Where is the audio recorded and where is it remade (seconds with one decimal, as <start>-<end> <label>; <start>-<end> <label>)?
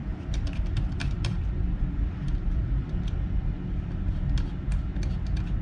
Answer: 0.0-3.4 remade; 3.4-5.6 recorded